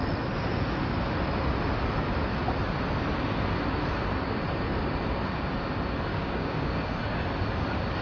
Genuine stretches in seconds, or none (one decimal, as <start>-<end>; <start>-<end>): 0.0-6.1; 6.8-8.0